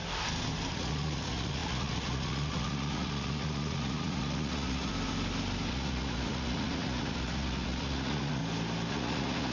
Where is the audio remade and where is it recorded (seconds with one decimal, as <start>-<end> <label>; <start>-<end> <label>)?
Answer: 0.0-0.7 recorded; 0.7-4.9 remade; 4.9-5.7 recorded; 5.7-8.4 remade; 8.4-8.9 recorded; 8.9-9.5 remade